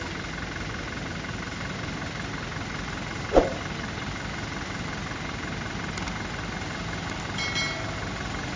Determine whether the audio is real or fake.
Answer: real